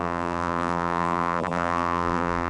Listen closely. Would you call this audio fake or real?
fake